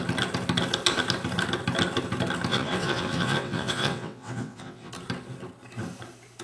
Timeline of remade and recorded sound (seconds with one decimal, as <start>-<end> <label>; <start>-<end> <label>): 0.0-2.5 recorded; 2.5-4.9 remade; 4.9-6.4 recorded